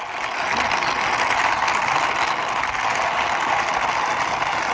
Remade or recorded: recorded